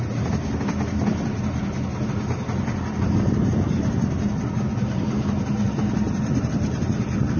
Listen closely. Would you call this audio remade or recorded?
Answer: recorded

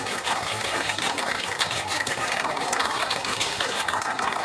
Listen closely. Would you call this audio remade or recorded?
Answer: remade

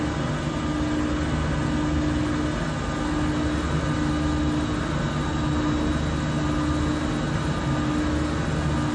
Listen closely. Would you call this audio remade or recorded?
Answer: recorded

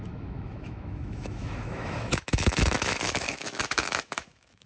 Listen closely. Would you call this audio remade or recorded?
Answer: remade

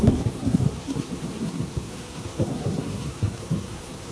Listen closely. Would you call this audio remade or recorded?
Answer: remade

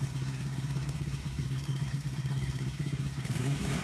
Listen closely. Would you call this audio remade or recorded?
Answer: remade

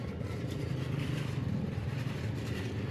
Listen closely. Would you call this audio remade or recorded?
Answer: remade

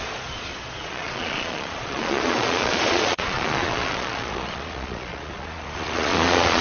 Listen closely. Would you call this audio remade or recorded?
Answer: remade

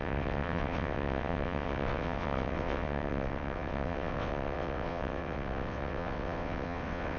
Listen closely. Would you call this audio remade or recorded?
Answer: remade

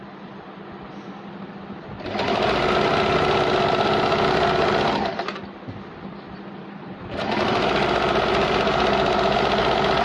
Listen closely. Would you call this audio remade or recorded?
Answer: recorded